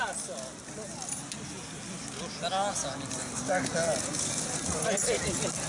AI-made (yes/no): no